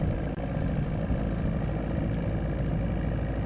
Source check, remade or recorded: recorded